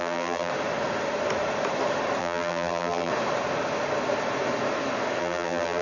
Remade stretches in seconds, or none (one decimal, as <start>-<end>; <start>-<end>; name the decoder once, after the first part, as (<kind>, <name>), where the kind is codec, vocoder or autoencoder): 0.0-0.5 (vocoder, BigVGAN v2); 2.2-3.1; 5.2-5.8